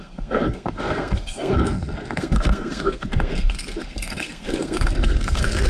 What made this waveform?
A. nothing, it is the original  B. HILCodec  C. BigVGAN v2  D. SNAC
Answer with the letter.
D